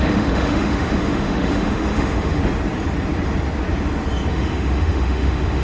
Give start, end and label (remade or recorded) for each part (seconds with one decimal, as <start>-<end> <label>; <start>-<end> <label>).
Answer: 0.0-2.4 remade; 2.4-4.3 recorded; 4.3-5.6 remade